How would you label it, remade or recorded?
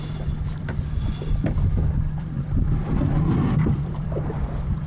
recorded